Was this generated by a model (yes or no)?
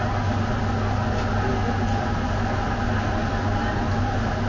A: no